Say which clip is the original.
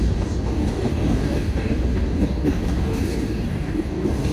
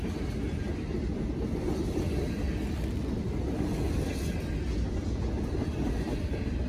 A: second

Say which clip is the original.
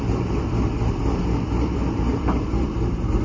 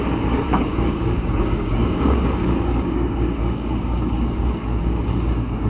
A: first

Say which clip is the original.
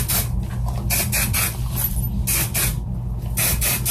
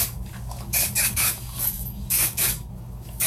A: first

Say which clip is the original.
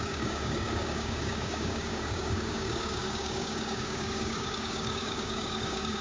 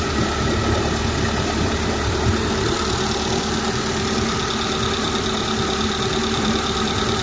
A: second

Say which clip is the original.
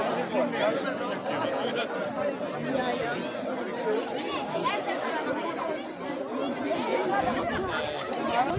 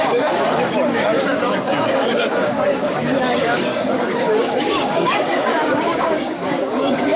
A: first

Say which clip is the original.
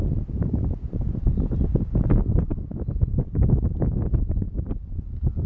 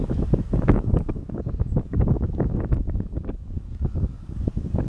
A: first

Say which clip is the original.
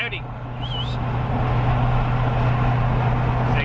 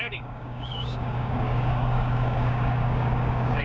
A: first